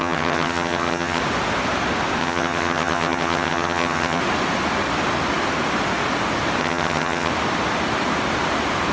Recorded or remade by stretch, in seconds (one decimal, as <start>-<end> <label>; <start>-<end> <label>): 0.0-1.2 remade; 1.2-2.2 recorded; 2.2-4.2 remade; 4.2-6.6 recorded; 6.6-7.3 remade; 7.3-8.9 recorded